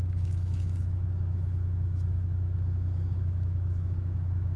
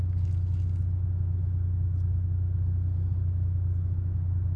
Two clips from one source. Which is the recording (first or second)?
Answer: second